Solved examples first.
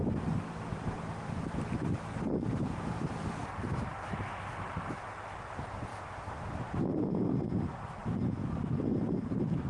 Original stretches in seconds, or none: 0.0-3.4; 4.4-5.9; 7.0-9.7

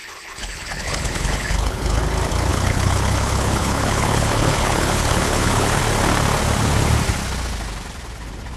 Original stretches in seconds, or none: 2.0-2.5; 5.8-8.6

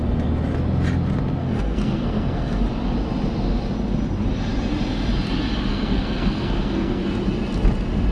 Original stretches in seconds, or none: 0.0-1.4; 2.6-5.7; 7.0-8.1

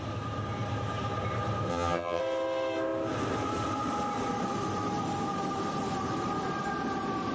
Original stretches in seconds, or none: 0.0-1.7; 2.2-7.3

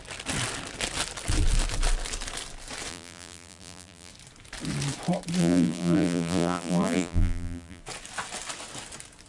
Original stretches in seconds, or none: 0.0-2.9; 4.1-5.4; 7.8-9.3

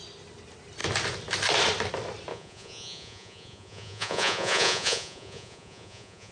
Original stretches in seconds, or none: 0.0-2.3

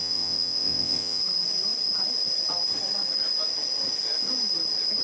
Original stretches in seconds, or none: 1.2-5.0